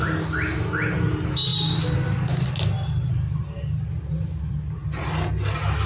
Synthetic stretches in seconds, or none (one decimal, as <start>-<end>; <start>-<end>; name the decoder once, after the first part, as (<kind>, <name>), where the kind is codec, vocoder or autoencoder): none